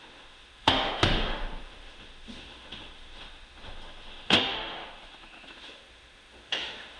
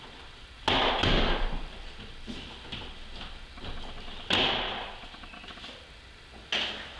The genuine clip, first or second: second